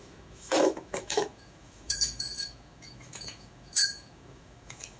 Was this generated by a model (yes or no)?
yes